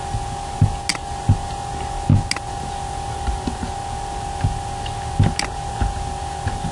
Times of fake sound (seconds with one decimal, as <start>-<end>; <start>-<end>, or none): none